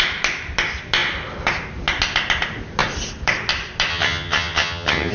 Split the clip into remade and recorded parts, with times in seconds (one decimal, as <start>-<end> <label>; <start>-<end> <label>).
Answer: 0.0-3.9 recorded; 3.9-5.1 remade